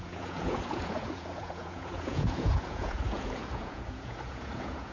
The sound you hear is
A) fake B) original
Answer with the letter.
A